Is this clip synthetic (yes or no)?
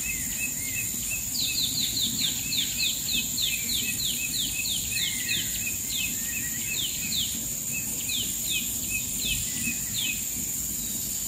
no